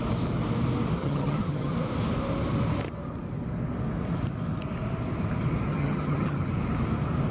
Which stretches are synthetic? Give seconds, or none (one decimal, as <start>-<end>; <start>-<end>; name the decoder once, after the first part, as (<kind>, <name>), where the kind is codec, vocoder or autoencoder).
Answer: 1.0-1.7 (vocoder, HiFi-GAN); 5.7-6.5